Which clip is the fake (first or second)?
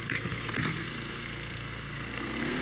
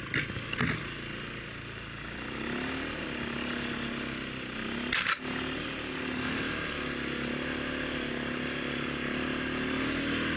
first